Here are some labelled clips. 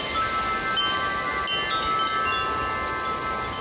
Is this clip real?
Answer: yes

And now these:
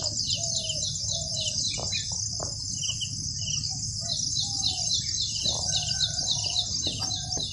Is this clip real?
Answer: yes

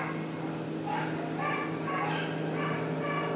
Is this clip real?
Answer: yes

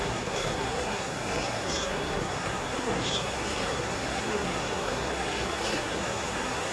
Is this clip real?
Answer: no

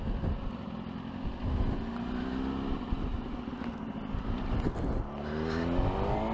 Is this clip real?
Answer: yes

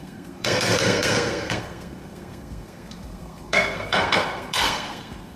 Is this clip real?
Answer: no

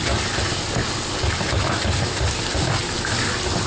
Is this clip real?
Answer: yes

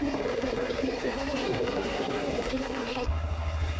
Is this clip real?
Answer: no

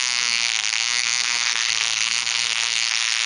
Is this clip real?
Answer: no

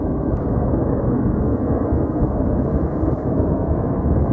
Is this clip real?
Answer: no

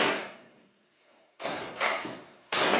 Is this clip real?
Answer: no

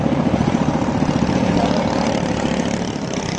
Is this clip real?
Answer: yes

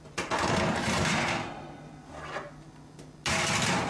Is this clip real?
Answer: yes